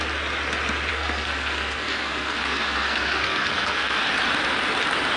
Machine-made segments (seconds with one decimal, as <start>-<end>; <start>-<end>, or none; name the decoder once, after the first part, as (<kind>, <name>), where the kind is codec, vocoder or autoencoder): 0.9-4.0 (codec, SNAC)